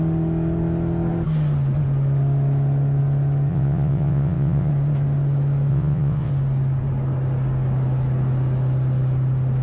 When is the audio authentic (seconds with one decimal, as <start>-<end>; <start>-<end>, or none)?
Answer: 0.0-3.5; 4.7-5.7; 6.3-9.6